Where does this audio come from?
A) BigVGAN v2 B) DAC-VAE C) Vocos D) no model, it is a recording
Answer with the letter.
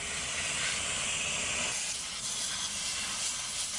D